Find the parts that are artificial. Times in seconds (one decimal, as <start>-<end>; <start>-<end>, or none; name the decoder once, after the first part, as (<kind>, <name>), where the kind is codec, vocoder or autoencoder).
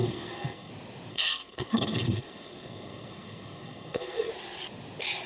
0.0-0.7 (codec, SNAC); 1.1-4.3